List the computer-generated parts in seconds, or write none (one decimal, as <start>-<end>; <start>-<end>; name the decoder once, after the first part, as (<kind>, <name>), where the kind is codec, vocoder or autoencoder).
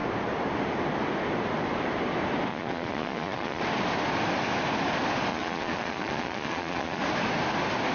2.5-3.6 (vocoder, Vocos); 5.3-7.0